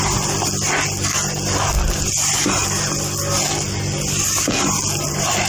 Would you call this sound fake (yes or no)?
no